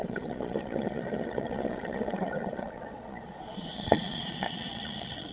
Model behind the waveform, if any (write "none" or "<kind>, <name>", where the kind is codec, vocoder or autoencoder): vocoder, Vocos